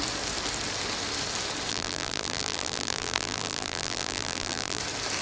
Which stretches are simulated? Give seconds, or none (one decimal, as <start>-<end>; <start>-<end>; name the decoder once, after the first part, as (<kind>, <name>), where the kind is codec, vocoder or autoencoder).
1.7-4.8 (vocoder, BigVGAN v2)